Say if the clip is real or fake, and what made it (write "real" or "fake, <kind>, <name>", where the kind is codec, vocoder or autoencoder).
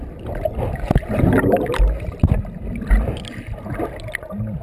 real